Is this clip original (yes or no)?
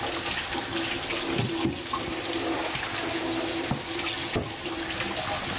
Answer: yes